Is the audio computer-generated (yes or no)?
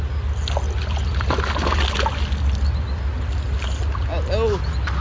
no